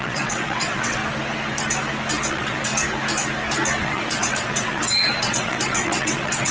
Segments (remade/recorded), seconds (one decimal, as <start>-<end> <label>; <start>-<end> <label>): 0.0-1.0 remade; 1.0-2.3 recorded; 2.3-2.7 remade; 2.7-3.8 recorded; 3.8-6.5 remade